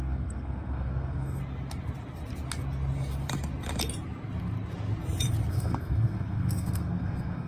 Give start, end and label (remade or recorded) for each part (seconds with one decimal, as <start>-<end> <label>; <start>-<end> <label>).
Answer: 0.0-1.4 remade; 1.4-5.5 recorded; 5.5-7.5 remade